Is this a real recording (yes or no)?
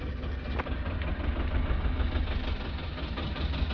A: yes